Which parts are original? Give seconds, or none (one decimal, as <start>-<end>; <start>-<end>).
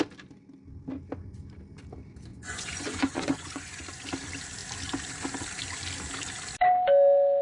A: 0.0-2.3; 3.8-7.4